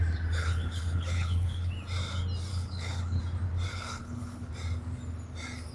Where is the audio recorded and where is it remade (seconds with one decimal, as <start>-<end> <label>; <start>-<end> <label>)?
0.0-0.4 recorded; 0.4-1.7 remade; 1.7-2.5 recorded; 2.5-3.2 remade; 3.2-3.7 recorded; 3.7-4.5 remade; 4.5-5.7 recorded